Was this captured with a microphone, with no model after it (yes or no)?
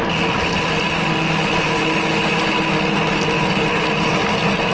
yes